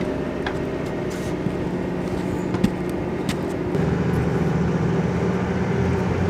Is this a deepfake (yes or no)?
no